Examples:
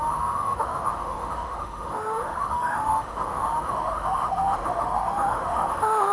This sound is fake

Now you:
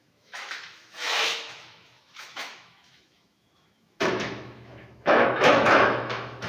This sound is fake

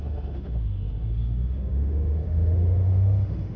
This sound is fake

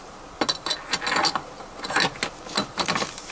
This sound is real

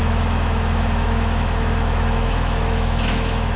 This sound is fake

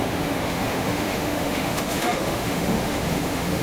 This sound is fake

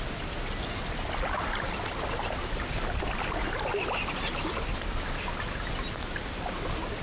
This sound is real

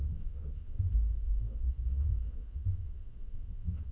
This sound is fake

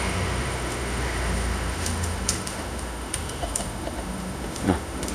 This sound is fake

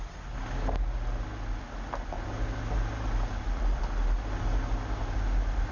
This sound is real